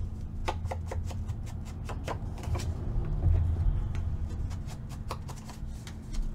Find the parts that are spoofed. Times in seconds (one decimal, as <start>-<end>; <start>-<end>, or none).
none